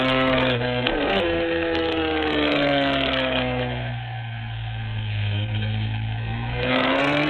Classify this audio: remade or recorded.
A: remade